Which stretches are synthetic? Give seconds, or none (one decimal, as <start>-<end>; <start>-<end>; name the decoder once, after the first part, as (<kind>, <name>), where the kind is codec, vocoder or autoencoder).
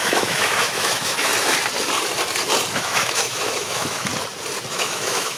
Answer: 0.0-1.3 (autoencoder, DAC-VAE); 2.7-4.1; 4.7-5.4